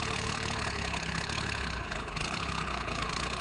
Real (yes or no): no